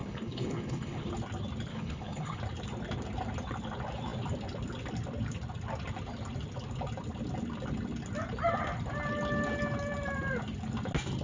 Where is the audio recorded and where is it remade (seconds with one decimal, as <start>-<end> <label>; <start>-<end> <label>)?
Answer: 0.0-1.1 remade; 1.1-1.7 recorded; 1.7-2.4 remade; 2.4-11.2 recorded